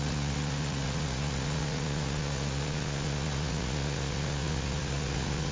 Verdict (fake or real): fake